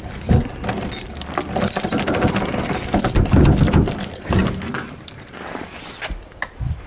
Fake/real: fake